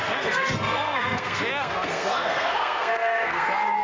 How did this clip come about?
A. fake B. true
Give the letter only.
A